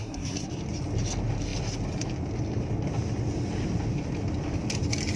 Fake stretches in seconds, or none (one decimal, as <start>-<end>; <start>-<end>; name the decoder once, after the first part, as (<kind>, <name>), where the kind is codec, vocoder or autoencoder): 0.0-0.5 (codec, SNAC)